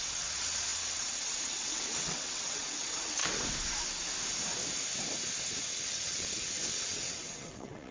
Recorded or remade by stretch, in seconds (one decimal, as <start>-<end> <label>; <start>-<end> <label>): 0.0-3.2 remade; 3.2-5.6 recorded; 5.6-7.9 remade